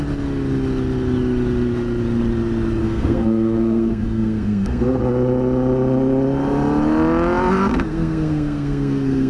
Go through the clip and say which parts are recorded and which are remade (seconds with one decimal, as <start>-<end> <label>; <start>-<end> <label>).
0.0-2.8 recorded; 2.8-5.0 remade; 5.0-7.7 recorded; 7.7-9.3 remade